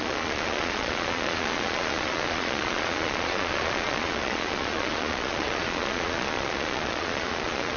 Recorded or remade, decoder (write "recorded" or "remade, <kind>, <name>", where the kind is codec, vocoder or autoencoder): remade, vocoder, Vocos